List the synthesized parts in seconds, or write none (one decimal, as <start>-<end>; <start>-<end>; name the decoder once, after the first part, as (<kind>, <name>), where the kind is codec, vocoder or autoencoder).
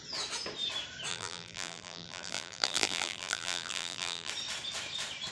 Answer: 1.1-4.3 (vocoder, BigVGAN v2)